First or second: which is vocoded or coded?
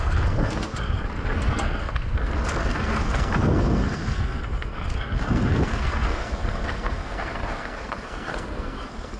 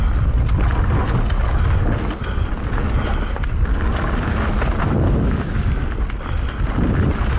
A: first